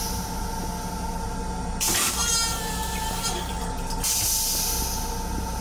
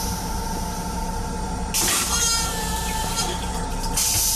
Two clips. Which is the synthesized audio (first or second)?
second